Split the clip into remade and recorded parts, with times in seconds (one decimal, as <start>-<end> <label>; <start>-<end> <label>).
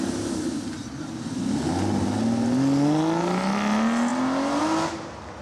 0.0-5.4 recorded